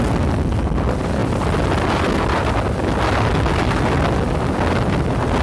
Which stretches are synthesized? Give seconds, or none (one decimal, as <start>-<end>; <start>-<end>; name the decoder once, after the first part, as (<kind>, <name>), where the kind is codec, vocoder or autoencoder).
none